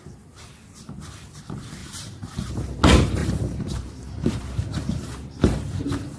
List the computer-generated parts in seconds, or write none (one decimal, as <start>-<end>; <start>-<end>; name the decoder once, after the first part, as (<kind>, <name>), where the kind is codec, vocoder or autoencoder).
1.8-2.5 (vocoder, BigVGAN v2); 3.2-6.2